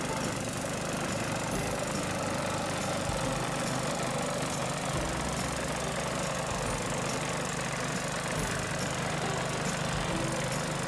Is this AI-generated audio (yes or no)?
no